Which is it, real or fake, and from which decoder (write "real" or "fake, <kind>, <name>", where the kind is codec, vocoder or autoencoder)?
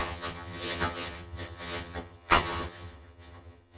fake, vocoder, HiFi-GAN